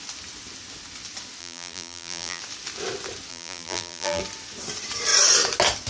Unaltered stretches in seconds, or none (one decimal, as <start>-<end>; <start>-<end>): 0.0-1.4; 2.4-3.3; 4.2-5.9